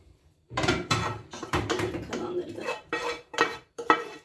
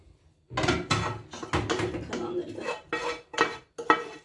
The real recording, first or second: second